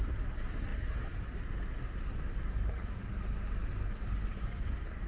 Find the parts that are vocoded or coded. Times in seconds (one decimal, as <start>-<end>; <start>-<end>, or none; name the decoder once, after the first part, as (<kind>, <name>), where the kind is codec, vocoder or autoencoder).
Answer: none